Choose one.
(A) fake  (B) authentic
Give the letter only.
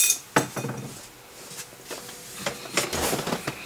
B